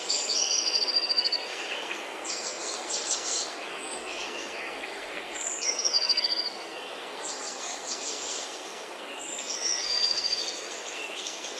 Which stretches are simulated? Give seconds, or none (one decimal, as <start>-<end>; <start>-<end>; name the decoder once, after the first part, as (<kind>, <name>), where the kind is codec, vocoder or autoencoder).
0.0-11.6 (codec, SNAC)